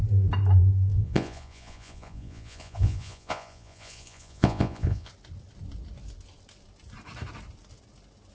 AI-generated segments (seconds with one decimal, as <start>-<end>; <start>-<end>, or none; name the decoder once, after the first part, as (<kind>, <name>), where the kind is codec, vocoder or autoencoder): 0.9-5.1 (vocoder, Vocos)